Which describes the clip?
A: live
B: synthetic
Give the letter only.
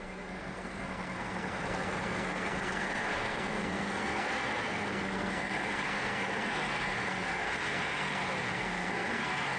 B